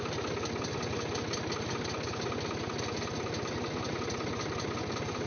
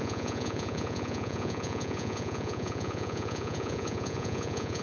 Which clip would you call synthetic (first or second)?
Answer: second